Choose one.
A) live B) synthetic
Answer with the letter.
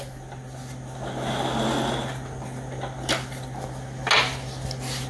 A